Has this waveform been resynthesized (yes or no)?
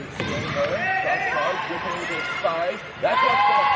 yes